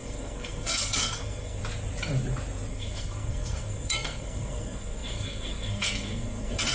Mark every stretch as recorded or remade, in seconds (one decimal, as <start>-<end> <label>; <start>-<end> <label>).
0.0-1.6 remade; 1.6-2.7 recorded; 2.7-6.7 remade